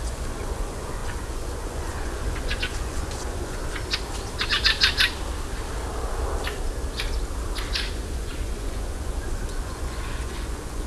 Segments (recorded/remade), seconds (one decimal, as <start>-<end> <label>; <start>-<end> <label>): 0.0-3.6 remade; 3.6-7.9 recorded; 7.9-10.9 remade